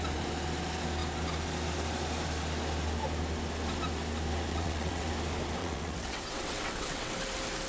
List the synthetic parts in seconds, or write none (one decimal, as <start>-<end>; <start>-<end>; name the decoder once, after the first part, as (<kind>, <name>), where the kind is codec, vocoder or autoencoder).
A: 4.5-5.1 (vocoder, WaveNeXt); 5.6-7.1